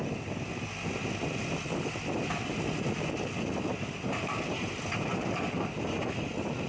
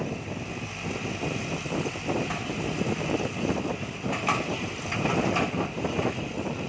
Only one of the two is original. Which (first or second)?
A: first